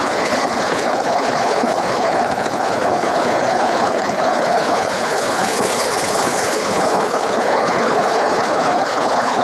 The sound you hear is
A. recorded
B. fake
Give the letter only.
B